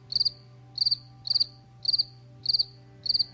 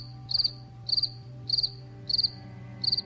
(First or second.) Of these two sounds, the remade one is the second